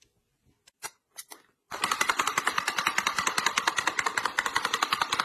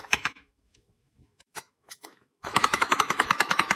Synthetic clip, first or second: second